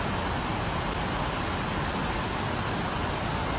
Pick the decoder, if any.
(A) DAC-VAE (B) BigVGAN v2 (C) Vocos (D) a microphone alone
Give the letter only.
D